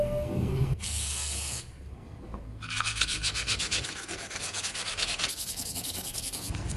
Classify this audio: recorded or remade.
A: remade